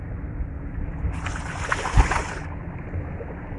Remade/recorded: recorded